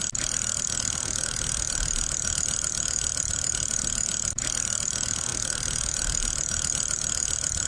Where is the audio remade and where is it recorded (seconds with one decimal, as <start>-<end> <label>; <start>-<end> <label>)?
0.0-7.7 recorded